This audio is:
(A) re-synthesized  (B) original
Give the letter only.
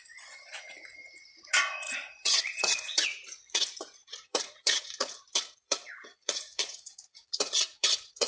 A